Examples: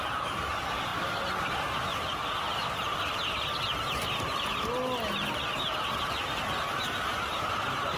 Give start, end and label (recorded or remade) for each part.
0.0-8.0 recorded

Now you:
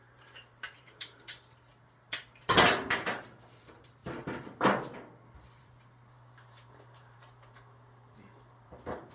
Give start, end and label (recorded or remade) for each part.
0.0-1.7 remade; 1.7-3.6 recorded; 3.6-4.0 remade; 4.0-5.6 recorded; 5.6-9.1 remade

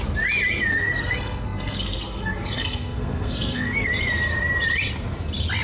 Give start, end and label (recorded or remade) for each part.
0.0-0.7 recorded; 0.7-3.9 remade; 3.9-5.6 recorded

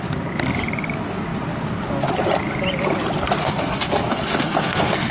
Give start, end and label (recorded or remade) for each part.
0.0-3.4 recorded; 3.4-5.1 remade

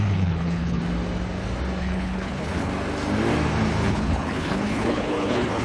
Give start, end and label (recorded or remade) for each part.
0.0-0.8 remade; 0.8-1.8 recorded; 1.8-2.7 remade; 2.7-3.9 recorded; 3.9-5.6 remade